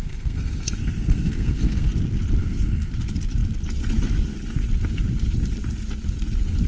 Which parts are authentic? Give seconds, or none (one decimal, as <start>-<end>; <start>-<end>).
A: 1.9-2.4; 2.9-6.7